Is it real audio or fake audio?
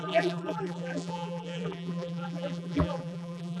fake